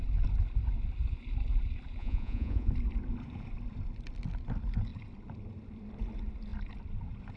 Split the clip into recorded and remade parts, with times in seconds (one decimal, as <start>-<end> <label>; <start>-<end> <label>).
0.0-2.0 recorded; 2.0-2.7 remade; 2.7-7.4 recorded